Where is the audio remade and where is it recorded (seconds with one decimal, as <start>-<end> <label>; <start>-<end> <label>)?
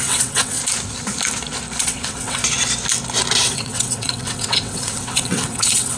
0.0-0.6 remade; 0.6-1.8 recorded; 1.8-2.4 remade; 2.4-3.4 recorded; 3.4-6.0 remade